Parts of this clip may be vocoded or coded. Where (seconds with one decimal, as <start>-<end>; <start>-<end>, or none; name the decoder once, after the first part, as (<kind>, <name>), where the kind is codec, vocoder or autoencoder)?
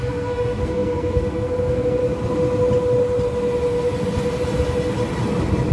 0.0-2.0 (codec, SNAC)